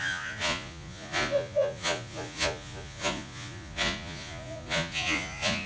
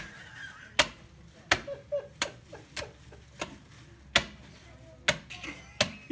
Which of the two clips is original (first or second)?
second